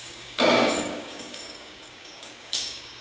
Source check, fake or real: fake